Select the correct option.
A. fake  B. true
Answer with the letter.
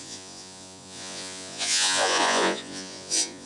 A